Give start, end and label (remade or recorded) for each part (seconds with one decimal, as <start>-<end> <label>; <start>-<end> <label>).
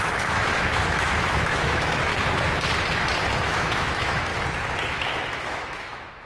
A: 0.0-2.1 remade; 2.1-3.4 recorded; 3.4-4.3 remade; 4.3-4.9 recorded; 4.9-6.3 remade